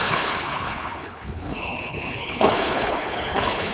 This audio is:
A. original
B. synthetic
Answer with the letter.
B